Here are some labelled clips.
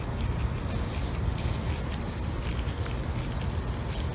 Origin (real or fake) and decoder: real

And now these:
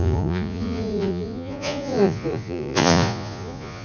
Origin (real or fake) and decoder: fake, vocoder, Vocos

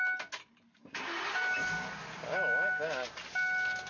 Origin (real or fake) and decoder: real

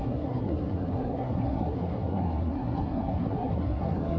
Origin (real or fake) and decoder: fake, codec, SNAC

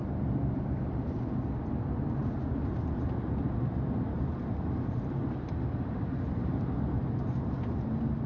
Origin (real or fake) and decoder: real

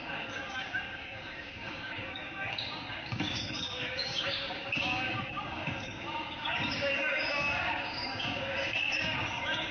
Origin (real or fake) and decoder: fake, codec, DAC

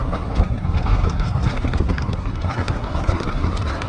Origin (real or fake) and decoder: fake, codec, SNAC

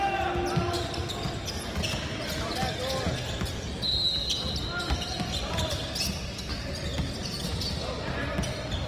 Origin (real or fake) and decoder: real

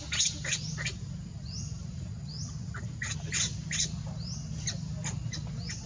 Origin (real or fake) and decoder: real